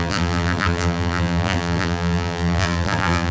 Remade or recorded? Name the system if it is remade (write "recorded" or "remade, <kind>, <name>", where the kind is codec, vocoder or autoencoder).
remade, vocoder, BigVGAN v2